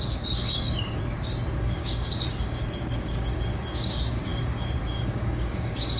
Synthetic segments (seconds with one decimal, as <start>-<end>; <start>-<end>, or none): 0.0-1.0; 1.6-6.0